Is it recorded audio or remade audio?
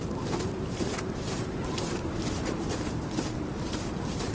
remade